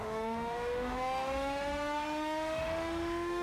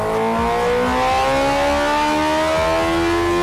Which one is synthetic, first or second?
first